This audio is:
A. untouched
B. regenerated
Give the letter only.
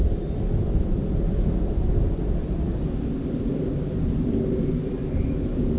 A